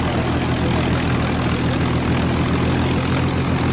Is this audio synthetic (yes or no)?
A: no